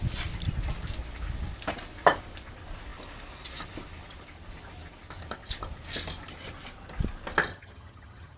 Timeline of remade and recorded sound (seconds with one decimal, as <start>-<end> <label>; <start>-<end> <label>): 0.0-7.5 recorded; 7.5-8.4 remade